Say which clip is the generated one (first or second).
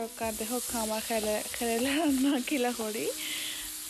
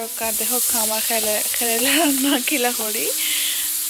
second